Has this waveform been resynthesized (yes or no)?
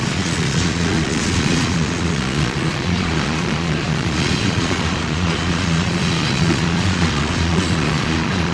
yes